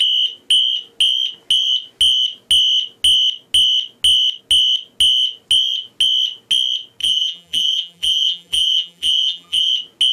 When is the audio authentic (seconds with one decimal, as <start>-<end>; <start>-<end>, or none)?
0.0-7.0; 9.7-10.1